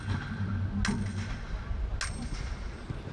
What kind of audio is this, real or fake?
real